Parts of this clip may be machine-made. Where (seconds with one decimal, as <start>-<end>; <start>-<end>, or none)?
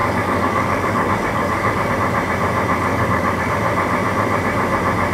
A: 0.0-1.9; 2.9-3.5